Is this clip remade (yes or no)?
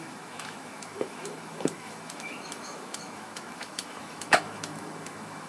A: yes